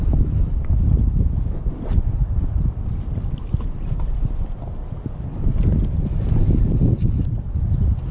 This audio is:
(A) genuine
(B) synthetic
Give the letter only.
A